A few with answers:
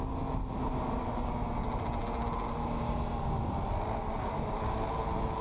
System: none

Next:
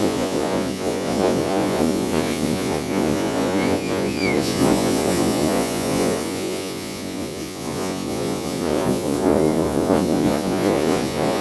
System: vocoder, Vocos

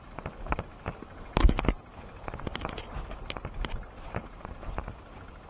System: none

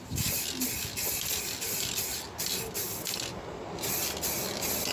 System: none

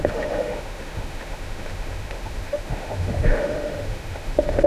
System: autoencoder, DAC-VAE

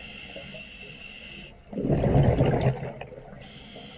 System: none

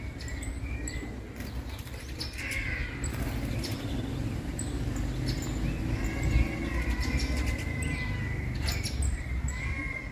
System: none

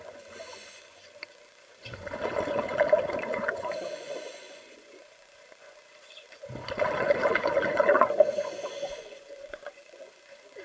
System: vocoder, Vocos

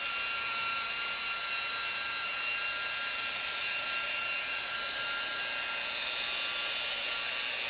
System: none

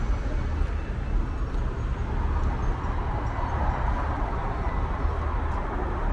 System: none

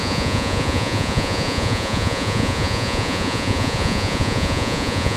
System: vocoder, Vocos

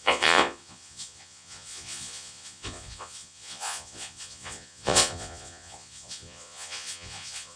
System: vocoder, Vocos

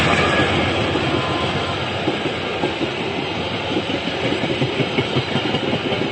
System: none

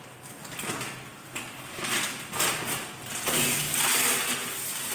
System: none